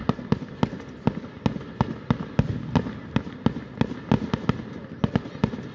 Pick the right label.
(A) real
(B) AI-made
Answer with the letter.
A